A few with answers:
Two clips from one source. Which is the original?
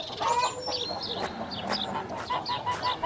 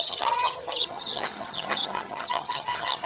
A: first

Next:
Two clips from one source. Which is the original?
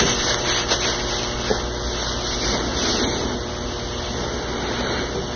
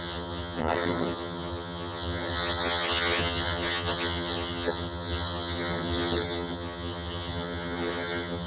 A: first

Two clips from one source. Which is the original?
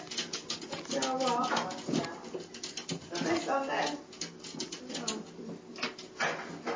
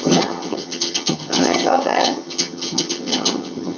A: first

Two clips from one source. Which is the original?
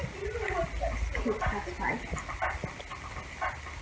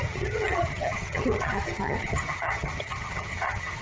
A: first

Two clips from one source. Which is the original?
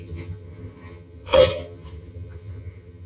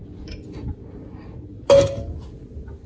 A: second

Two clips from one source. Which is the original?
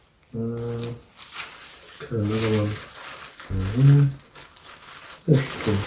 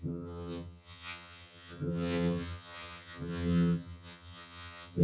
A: first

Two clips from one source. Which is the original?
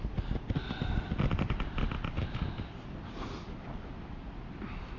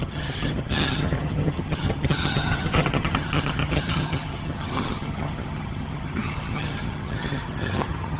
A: first